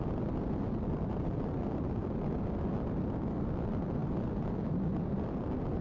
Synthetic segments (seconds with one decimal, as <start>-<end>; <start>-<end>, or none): none